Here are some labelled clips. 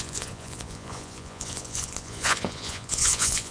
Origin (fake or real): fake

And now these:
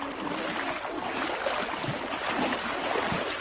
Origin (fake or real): real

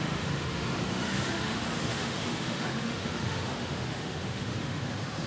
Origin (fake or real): fake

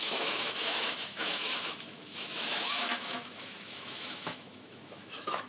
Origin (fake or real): fake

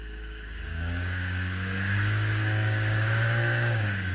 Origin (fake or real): fake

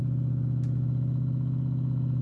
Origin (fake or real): real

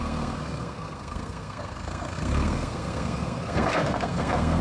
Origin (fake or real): fake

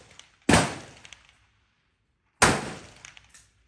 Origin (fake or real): real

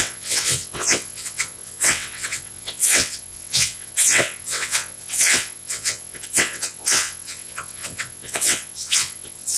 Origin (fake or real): fake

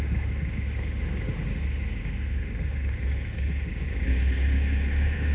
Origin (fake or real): fake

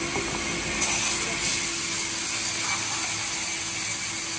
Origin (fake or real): real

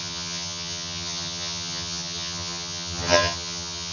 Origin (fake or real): fake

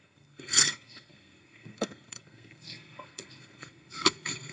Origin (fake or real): fake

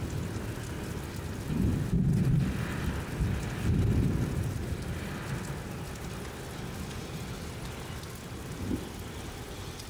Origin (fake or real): real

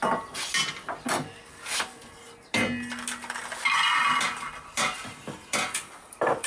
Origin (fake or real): real